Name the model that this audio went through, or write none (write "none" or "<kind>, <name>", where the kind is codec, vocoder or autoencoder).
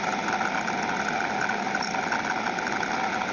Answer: none